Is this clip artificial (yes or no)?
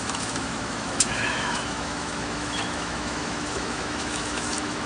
yes